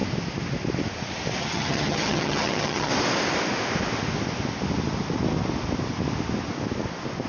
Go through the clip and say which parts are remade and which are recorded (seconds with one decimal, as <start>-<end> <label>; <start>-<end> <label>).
0.0-1.4 recorded; 1.4-2.9 remade; 2.9-7.3 recorded